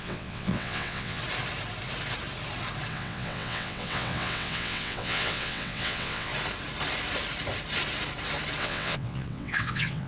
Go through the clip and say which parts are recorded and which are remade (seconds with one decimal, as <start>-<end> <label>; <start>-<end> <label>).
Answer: 0.0-1.2 remade; 1.2-2.9 recorded; 2.9-6.3 remade; 6.3-8.6 recorded; 8.6-10.1 remade